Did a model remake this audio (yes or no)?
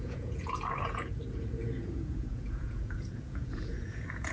yes